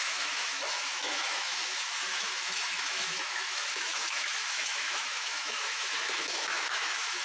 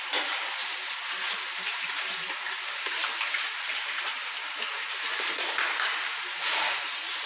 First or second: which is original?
second